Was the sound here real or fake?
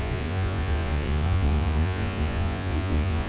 fake